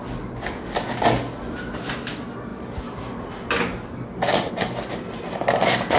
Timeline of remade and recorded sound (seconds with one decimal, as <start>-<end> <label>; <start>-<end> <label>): 0.0-6.0 recorded